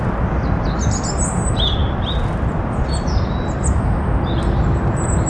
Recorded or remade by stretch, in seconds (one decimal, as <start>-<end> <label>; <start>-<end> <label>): 0.0-5.3 recorded